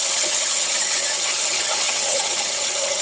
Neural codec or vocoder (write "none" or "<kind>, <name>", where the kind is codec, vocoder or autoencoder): vocoder, HiFi-GAN